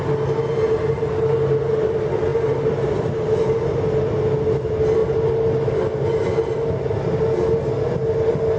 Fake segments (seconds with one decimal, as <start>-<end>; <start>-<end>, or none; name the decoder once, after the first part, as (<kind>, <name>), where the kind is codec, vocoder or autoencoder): none